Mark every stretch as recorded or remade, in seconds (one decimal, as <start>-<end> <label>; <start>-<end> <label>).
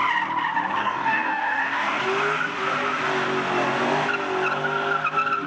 0.0-0.8 recorded; 0.8-2.0 remade; 2.0-5.5 recorded